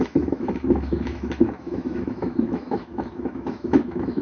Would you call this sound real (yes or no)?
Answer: no